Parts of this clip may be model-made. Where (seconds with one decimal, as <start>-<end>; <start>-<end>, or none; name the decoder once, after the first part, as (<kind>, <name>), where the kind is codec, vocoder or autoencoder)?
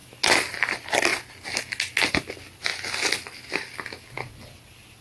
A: 0.7-1.1 (vocoder, BigVGAN v2); 2.3-2.7; 4.1-5.0